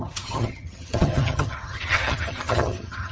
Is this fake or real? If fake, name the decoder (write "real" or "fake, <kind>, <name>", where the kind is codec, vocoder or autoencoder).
fake, vocoder, HiFi-GAN